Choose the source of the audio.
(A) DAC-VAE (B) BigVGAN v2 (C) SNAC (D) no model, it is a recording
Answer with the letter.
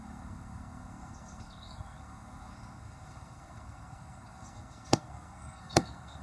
C